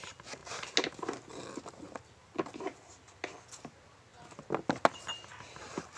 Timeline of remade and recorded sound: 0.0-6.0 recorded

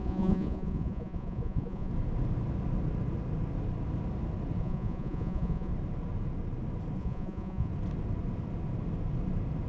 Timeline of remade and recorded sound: 0.0-1.9 remade; 1.9-4.6 recorded; 4.6-5.7 remade; 5.7-7.0 recorded; 7.0-7.7 remade; 7.7-9.7 recorded